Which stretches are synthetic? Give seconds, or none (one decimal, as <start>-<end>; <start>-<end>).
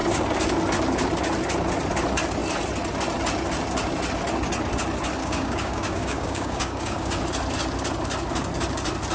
5.2-7.2